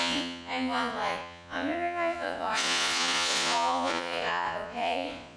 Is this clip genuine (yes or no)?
no